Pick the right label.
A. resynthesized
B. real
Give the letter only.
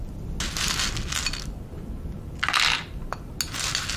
B